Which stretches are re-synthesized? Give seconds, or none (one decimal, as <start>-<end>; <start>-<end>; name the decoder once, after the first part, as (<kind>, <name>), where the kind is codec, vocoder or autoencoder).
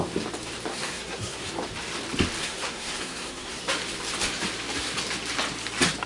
0.7-1.5 (codec, SNAC); 2.4-3.6